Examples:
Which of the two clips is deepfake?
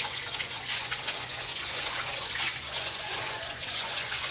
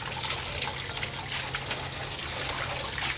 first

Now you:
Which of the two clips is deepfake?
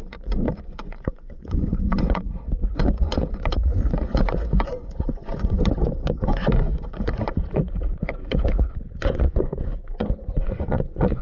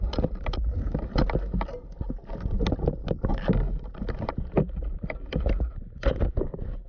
first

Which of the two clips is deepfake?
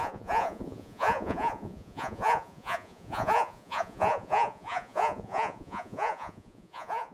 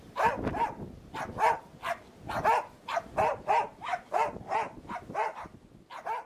first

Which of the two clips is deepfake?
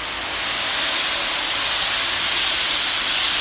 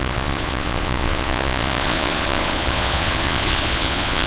second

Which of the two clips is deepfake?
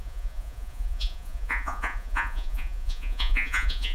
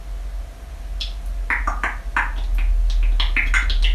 first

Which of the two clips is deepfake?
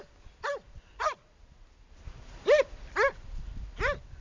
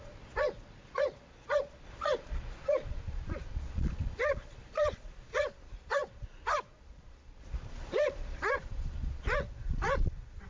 second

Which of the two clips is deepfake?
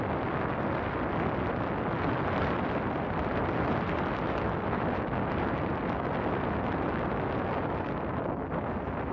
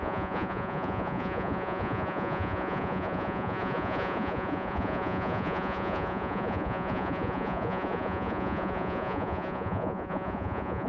second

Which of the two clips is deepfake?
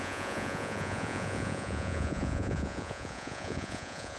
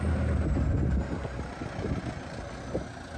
first